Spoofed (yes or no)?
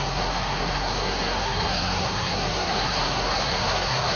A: yes